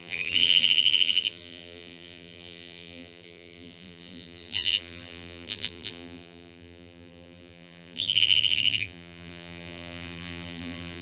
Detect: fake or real fake